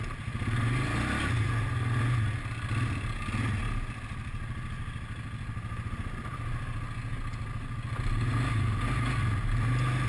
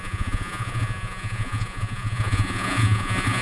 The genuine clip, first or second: first